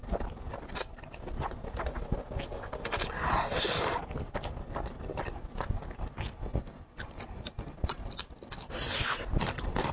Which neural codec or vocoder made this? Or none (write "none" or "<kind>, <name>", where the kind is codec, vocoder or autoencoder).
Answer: none